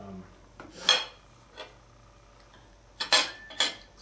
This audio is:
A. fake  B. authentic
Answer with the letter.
B